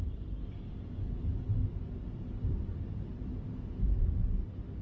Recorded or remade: recorded